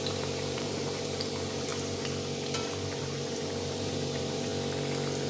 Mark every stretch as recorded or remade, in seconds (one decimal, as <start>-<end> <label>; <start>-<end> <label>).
0.0-1.7 remade; 1.7-3.0 recorded; 3.0-4.5 remade; 4.5-5.3 recorded

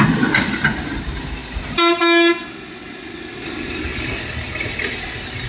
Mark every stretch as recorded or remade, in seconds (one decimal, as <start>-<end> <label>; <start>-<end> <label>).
0.0-5.5 recorded

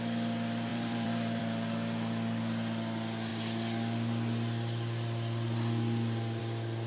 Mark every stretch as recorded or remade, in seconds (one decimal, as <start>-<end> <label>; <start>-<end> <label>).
0.0-0.7 recorded; 0.7-1.4 remade; 1.4-6.9 recorded

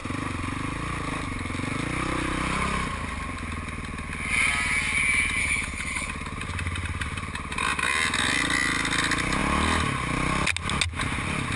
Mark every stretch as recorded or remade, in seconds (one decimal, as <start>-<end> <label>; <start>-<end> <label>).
0.0-5.4 recorded; 5.4-6.1 remade; 6.1-11.6 recorded